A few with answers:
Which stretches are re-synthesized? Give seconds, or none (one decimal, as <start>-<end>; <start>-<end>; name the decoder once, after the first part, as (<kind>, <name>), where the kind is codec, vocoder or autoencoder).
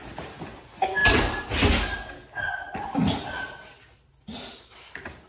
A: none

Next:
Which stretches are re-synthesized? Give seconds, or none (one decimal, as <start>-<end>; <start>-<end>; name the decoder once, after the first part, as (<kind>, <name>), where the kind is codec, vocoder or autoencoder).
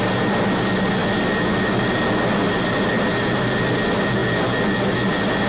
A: none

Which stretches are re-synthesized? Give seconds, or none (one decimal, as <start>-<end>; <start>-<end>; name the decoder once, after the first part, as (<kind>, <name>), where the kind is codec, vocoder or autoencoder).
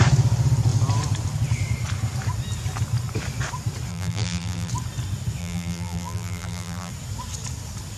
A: 3.9-4.7 (vocoder, BigVGAN v2); 5.4-6.9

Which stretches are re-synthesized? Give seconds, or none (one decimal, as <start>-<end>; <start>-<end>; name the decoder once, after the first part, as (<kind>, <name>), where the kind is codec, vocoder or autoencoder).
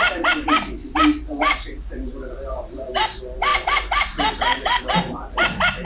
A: 0.8-1.4 (vocoder, BigVGAN v2); 2.1-3.0; 3.5-4.8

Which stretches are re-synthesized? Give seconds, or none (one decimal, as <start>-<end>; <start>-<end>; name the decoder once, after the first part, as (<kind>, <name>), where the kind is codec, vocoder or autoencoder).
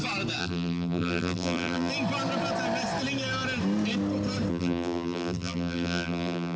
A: 0.4-1.9 (vocoder, BigVGAN v2); 4.5-6.6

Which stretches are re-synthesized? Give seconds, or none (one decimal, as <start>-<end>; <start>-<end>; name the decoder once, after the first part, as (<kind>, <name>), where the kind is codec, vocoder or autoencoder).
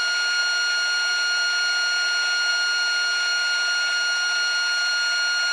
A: none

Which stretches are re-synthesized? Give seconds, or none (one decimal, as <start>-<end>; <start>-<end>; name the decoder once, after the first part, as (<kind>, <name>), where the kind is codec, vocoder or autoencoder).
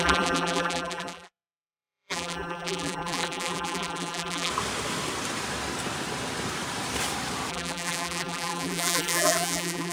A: 0.0-4.5 (vocoder, BigVGAN v2); 7.5-9.9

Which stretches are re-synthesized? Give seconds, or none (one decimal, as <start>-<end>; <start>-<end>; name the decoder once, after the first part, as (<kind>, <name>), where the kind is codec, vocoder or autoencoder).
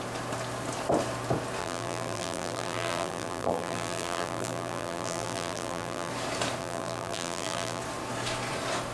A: 1.6-6.1 (vocoder, BigVGAN v2); 6.6-7.8